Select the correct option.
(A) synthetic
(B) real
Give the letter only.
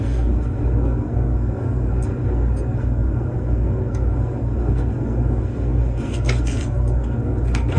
A